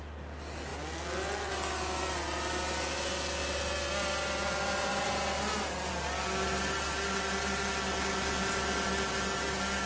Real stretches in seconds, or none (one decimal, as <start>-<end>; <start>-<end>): 0.0-9.9

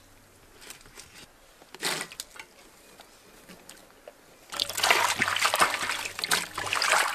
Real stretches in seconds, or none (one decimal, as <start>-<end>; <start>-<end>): 0.0-7.1

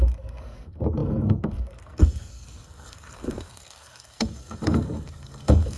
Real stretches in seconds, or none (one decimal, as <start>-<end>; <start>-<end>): none